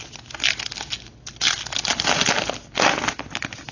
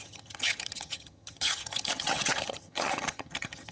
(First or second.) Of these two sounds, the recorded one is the first